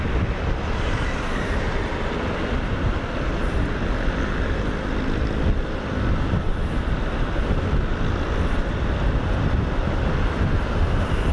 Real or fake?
fake